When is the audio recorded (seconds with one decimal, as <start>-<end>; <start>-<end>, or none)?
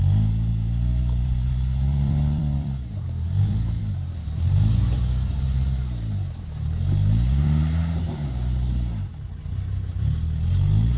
none